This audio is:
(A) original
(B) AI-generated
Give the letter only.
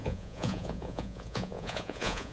B